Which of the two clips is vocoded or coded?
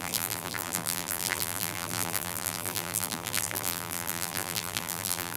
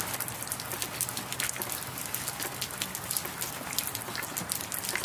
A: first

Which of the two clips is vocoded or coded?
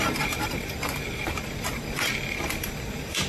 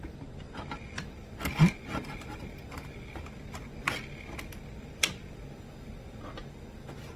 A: first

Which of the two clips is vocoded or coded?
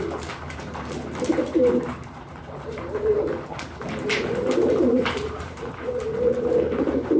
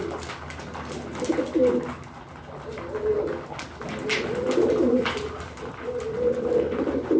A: first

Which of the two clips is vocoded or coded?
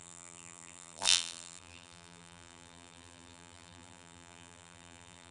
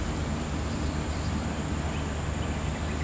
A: first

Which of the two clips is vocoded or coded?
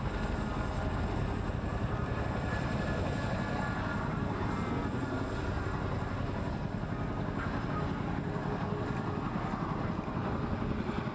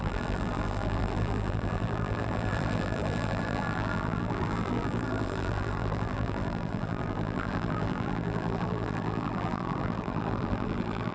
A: second